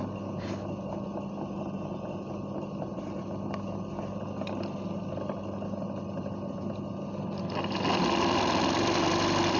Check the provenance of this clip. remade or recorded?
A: recorded